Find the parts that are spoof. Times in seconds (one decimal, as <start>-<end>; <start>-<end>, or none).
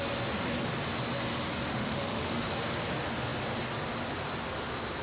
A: 1.7-2.5